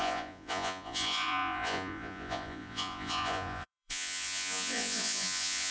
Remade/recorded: remade